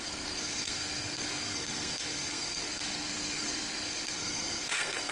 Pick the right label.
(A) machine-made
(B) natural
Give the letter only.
A